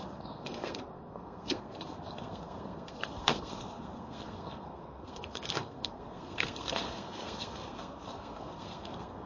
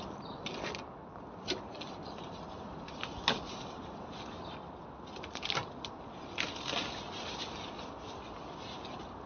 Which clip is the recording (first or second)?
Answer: second